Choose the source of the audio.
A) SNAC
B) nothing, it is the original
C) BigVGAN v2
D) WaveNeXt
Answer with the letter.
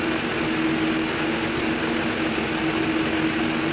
B